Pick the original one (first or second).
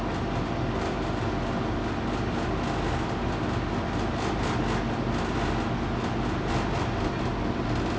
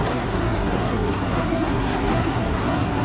first